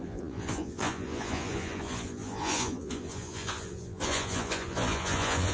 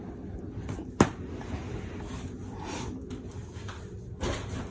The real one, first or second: second